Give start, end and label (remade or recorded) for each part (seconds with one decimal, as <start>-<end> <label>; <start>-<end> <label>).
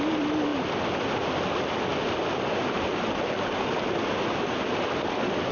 0.0-5.5 recorded